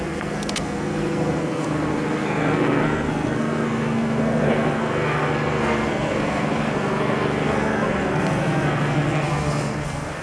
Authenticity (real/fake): fake